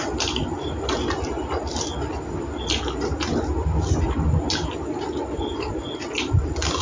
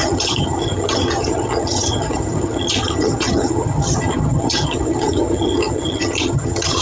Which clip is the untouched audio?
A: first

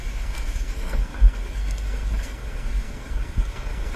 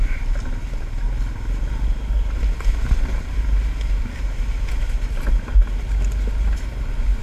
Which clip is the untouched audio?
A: second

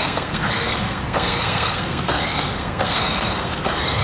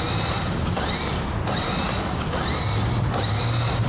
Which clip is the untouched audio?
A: second